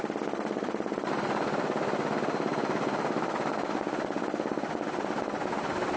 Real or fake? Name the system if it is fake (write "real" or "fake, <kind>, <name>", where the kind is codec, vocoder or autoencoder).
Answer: real